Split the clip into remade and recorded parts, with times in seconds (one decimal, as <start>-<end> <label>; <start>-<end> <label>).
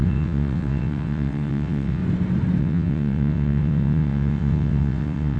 0.0-2.0 remade; 2.0-2.6 recorded; 2.6-5.4 remade